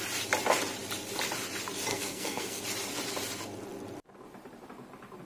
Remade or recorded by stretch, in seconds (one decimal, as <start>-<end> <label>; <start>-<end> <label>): 0.0-1.9 recorded; 1.9-2.6 remade; 2.6-5.2 recorded